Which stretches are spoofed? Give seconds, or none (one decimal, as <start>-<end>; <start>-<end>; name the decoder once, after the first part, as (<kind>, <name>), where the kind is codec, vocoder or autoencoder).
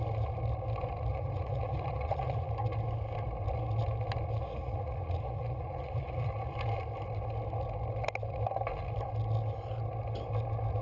1.1-2.5 (vocoder, Vocos); 4.5-6.3